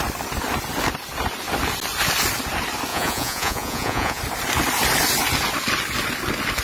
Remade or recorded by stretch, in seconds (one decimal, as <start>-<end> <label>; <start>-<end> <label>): 0.0-2.9 recorded; 2.9-4.2 remade; 4.2-6.6 recorded